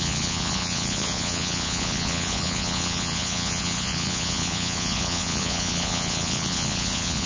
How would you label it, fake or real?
fake